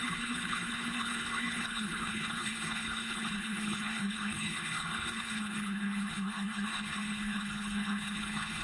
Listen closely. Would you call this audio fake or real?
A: fake